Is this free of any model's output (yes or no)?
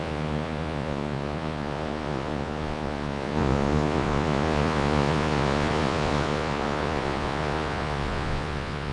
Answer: no